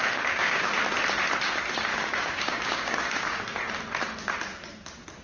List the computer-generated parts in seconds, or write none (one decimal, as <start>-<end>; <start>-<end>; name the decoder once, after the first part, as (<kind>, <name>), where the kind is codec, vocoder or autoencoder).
0.0-0.7 (codec, DAC); 1.9-3.4